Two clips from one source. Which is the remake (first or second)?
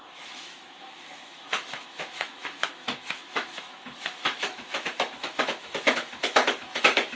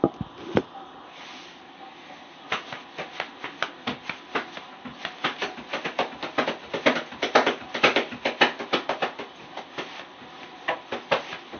first